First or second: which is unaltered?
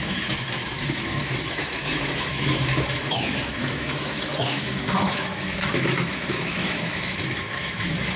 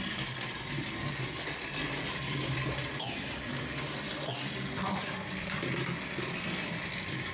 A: second